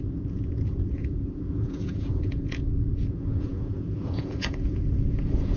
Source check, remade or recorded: remade